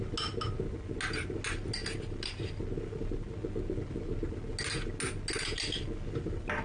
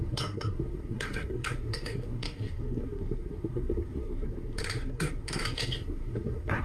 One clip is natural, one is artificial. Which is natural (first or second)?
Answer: first